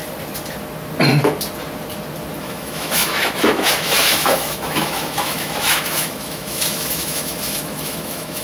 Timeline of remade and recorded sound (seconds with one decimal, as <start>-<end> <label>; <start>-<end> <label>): 0.0-2.4 recorded; 2.4-8.4 remade